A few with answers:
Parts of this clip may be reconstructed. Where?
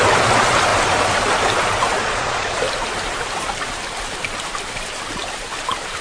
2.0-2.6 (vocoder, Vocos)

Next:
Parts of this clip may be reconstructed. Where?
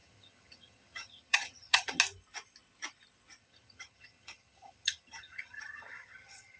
0.0-2.0 (vocoder, HiFi-GAN); 3.4-6.6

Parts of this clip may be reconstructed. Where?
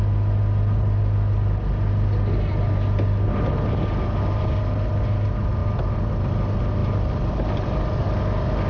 6.8-8.0 (vocoder, BigVGAN v2)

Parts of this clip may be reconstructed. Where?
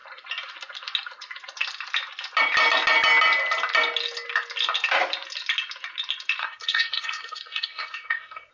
6.4-8.5 (codec, SNAC)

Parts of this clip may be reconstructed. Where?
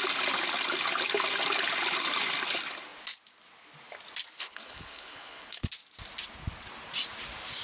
4.4-5.7 (codec, HILCodec)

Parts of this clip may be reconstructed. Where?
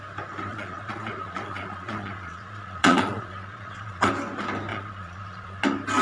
0.5-4.1 (vocoder, Vocos); 4.7-5.6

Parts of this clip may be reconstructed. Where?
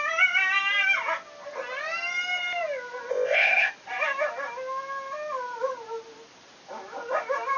3.1-3.7 (codec, ZipCodec)